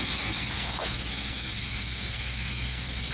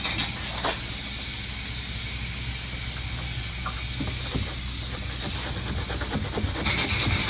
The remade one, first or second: first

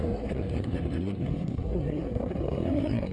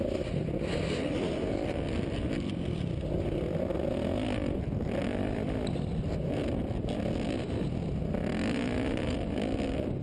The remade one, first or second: first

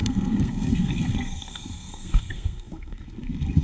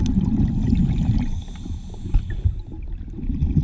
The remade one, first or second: first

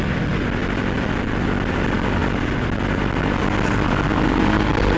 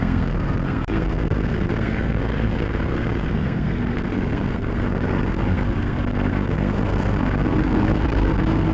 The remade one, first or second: second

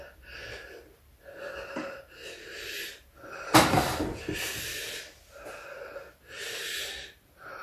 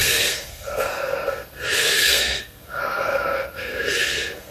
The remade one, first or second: second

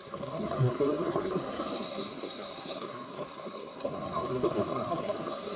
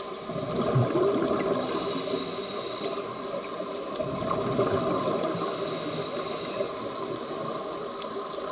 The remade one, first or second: first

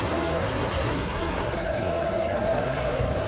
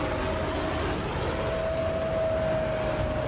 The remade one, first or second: first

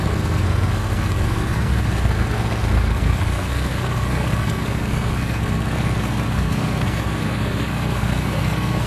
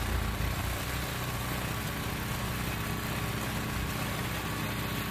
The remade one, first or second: first